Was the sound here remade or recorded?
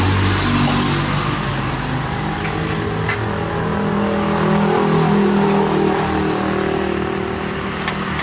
recorded